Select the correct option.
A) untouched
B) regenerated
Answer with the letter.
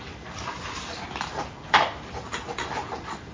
A